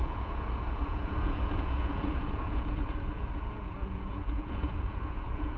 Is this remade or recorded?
remade